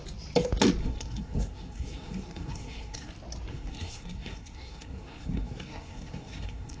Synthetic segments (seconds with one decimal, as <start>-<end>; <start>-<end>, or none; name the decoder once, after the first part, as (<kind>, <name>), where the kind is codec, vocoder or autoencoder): 0.8-3.1 (codec, SNAC); 3.5-6.8